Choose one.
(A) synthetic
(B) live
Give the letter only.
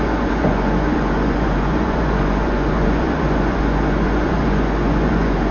A